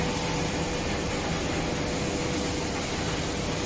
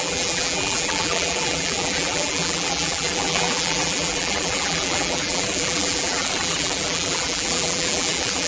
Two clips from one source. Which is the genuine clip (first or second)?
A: first